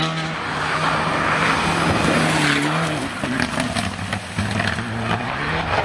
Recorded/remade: recorded